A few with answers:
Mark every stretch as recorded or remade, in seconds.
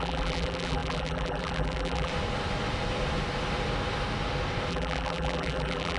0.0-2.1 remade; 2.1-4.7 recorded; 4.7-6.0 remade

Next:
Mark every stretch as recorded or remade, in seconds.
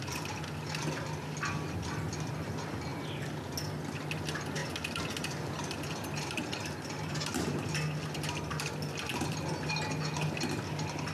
0.0-11.1 recorded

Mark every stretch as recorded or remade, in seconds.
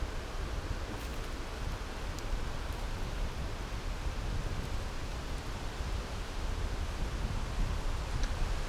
0.0-5.1 recorded; 5.1-6.1 remade; 6.1-8.7 recorded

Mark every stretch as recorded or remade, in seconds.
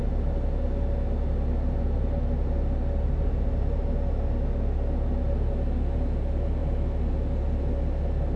0.0-8.4 recorded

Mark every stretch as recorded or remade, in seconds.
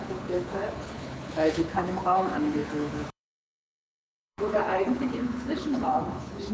0.0-6.5 remade